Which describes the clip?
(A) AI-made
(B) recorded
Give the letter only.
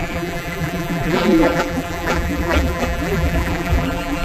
A